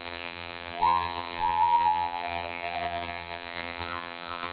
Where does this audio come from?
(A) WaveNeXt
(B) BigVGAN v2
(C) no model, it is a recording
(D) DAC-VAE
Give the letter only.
B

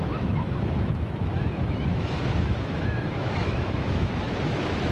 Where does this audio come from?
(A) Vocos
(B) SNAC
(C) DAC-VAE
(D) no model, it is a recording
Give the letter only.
C